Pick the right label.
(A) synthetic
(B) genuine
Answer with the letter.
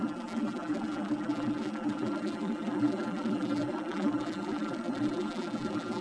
A